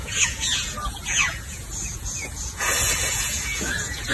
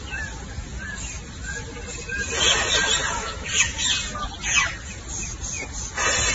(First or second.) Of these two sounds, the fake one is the first